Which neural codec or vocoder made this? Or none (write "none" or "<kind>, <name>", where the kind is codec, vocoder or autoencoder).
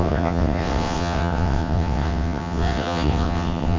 vocoder, WaveNeXt